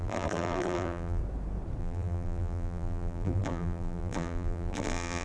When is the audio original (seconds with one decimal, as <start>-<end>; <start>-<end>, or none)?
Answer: 1.2-1.8